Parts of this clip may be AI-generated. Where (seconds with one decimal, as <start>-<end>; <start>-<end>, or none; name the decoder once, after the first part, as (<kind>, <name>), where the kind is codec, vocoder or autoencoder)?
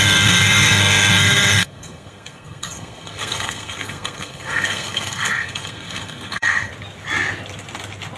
0.0-6.7 (codec, SNAC)